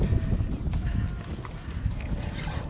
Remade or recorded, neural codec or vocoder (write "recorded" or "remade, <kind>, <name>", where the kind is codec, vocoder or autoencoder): recorded